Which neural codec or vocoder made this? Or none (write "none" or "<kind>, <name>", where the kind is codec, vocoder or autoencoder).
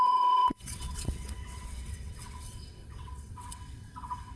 vocoder, WaveNeXt